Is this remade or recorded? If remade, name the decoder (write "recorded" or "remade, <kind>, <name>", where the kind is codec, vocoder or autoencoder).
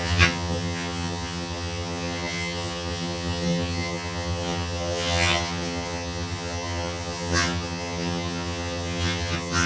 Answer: remade, vocoder, HiFi-GAN